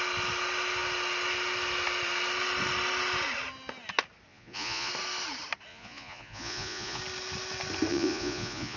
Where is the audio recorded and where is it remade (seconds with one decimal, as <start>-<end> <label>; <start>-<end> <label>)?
0.0-4.3 recorded; 4.3-4.9 remade; 4.9-5.7 recorded; 5.7-7.0 remade; 7.0-7.9 recorded; 7.9-8.8 remade